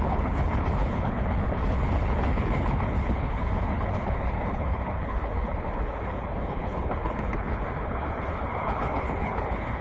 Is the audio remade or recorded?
remade